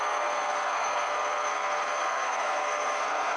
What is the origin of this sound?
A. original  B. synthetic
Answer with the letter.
B